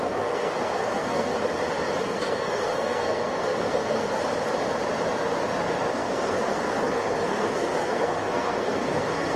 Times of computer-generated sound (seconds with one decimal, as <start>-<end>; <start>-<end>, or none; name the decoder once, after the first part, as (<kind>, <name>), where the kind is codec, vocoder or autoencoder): 0.0-1.3 (codec, SNAC); 2.0-4.2; 5.9-9.4